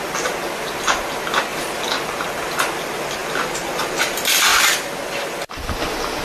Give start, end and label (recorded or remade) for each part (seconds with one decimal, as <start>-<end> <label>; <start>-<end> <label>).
0.0-1.5 recorded; 1.5-2.0 remade; 2.0-4.5 recorded; 4.5-5.8 remade; 5.8-6.2 recorded

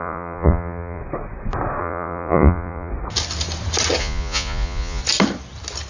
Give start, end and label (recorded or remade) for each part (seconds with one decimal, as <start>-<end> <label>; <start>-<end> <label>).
0.0-1.0 remade; 1.0-1.8 recorded; 1.8-2.9 remade; 2.9-4.0 recorded; 4.0-5.0 remade; 5.0-5.9 recorded

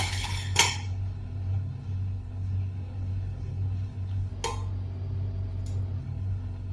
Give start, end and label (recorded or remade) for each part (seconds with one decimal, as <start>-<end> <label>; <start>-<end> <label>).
0.0-4.3 remade; 4.3-6.0 recorded; 6.0-6.7 remade

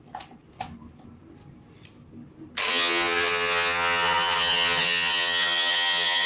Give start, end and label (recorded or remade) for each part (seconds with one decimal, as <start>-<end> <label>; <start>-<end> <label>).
0.0-2.7 recorded; 2.7-6.3 remade

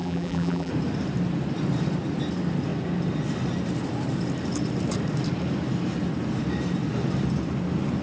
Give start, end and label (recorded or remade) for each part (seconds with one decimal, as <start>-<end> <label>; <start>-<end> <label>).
0.0-0.7 remade; 0.7-8.0 recorded

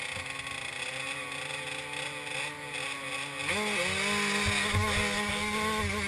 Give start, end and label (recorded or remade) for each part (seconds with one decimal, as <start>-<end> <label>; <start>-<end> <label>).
0.0-6.1 recorded